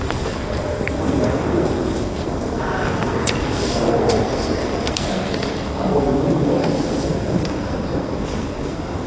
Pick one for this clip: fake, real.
fake